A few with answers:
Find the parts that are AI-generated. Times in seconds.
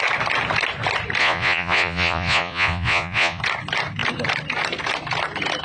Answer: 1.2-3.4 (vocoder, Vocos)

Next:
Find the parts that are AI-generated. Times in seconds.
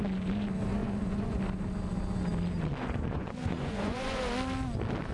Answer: 0.8-1.4 (vocoder, Vocos); 2.8-4.2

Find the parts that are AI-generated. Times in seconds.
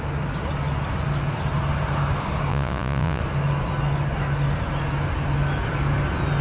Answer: 2.5-3.2 (vocoder, Vocos)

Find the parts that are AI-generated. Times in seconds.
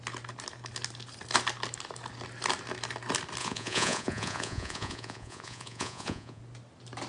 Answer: 3.4-6.4 (vocoder, Vocos)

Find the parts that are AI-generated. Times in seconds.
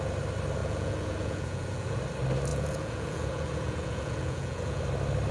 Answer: 0.6-2.0 (vocoder, Vocos); 2.5-4.8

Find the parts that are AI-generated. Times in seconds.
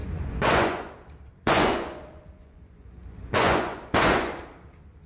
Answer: 0.0-0.9 (vocoder, Vocos); 1.3-4.4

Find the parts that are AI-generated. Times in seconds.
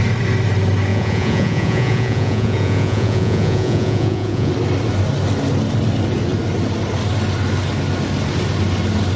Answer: 0.9-4.5 (vocoder, Vocos)